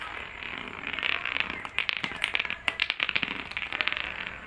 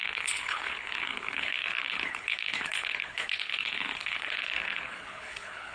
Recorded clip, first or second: first